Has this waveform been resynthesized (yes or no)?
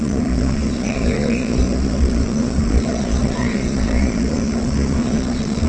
yes